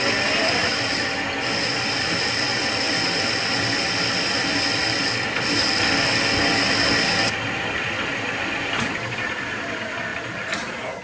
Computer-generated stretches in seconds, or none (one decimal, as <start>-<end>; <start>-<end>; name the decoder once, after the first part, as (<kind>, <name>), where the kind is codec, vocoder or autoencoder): none